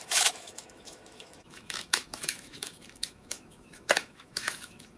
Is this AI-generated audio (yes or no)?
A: yes